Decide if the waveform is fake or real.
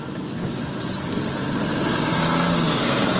real